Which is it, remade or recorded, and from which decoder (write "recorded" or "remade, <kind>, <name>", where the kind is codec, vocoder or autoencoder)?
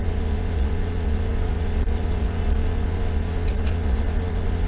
remade, vocoder, Vocos